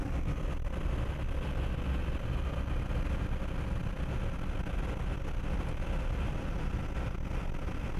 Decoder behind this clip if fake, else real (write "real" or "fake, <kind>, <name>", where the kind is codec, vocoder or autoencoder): real